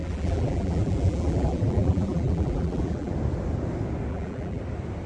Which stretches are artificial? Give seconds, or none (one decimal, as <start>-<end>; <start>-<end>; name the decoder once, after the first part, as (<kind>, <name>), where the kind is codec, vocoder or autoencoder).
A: 0.0-3.1 (vocoder, BigVGAN v2); 4.1-4.6